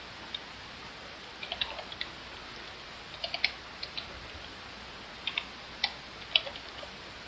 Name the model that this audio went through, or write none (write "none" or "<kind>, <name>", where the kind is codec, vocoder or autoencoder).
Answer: none